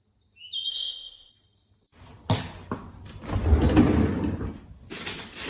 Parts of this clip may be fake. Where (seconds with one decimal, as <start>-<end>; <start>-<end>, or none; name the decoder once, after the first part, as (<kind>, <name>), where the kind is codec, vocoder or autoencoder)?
0.7-1.3 (codec, ZipCodec)